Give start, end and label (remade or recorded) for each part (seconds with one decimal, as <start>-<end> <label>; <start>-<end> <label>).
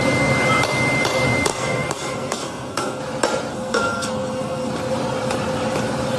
0.0-1.5 recorded; 1.5-3.0 remade; 3.0-3.5 recorded; 3.5-4.7 remade; 4.7-6.2 recorded